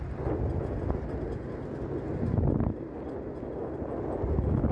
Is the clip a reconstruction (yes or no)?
no